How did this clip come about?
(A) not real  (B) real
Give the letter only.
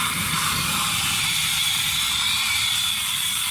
A